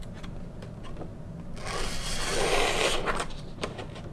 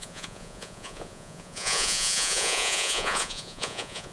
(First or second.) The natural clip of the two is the first